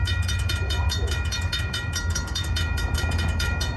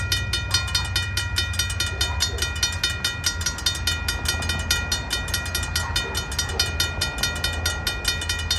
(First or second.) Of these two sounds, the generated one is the first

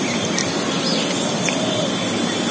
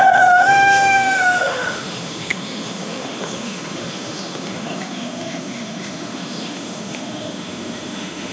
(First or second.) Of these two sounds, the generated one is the second